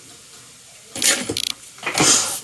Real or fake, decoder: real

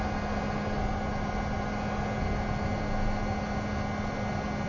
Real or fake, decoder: real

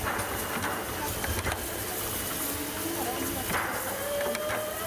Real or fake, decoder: real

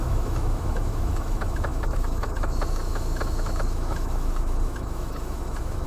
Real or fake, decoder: fake, autoencoder, DAC-VAE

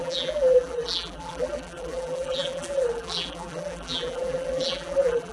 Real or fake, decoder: fake, vocoder, BigVGAN v2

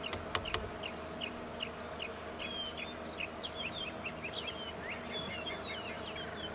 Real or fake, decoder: real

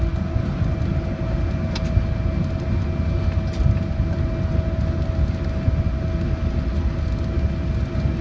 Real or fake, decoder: real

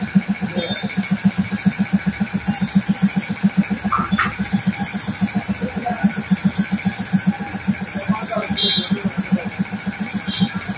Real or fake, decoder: real